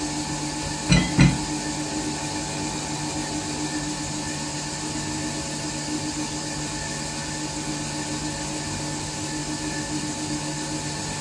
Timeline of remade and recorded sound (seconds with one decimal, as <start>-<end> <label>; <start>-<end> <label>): 0.0-3.2 recorded; 3.2-4.0 remade; 4.0-9.4 recorded; 9.4-10.3 remade; 10.3-11.2 recorded

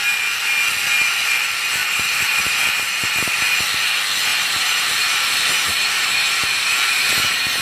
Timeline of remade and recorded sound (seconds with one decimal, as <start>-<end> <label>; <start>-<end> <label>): 0.0-1.8 recorded; 1.8-3.3 remade; 3.3-4.3 recorded; 4.3-7.6 remade

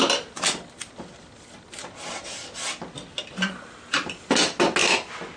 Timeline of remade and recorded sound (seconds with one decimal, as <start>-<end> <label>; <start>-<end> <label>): 0.0-5.4 recorded

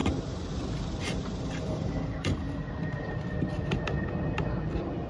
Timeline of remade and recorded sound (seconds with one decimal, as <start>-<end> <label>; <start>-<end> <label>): 0.0-0.5 remade; 0.5-1.0 recorded; 1.0-3.1 remade; 3.1-5.1 recorded